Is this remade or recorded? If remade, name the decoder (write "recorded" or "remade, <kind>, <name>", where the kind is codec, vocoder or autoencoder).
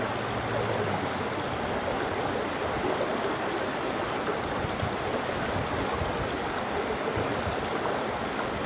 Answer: recorded